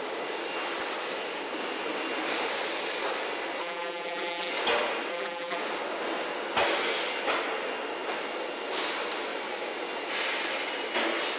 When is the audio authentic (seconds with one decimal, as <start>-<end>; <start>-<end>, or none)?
0.0-3.6; 4.5-5.1; 5.6-11.4